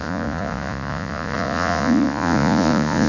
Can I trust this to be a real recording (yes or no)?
no